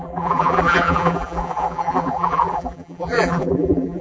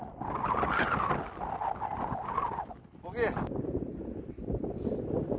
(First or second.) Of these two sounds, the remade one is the first